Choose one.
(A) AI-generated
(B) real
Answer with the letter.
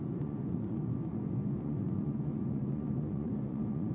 A